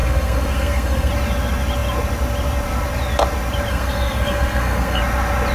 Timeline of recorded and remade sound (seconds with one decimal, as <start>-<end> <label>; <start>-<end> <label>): 0.0-1.1 remade; 1.1-3.7 recorded; 3.7-5.0 remade; 5.0-5.5 recorded